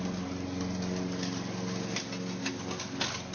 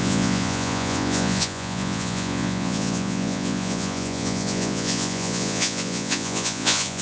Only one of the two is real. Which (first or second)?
first